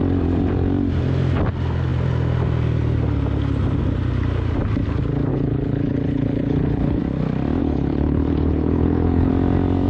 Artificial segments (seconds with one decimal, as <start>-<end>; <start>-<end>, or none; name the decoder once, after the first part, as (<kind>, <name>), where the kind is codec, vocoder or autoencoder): 5.3-7.0 (codec, HILCodec); 7.6-9.3